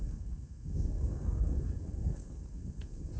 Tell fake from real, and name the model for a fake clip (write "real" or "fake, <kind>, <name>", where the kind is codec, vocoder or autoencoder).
fake, codec, SNAC